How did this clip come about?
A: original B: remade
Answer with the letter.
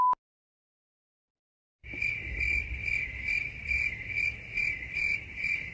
A